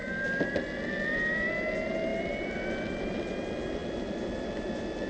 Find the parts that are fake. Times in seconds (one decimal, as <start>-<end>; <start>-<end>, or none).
2.1-3.3